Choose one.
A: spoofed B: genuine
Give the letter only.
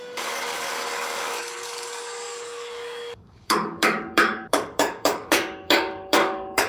A